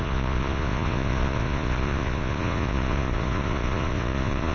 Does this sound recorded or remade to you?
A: remade